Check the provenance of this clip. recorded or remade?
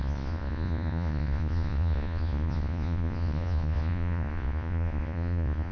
remade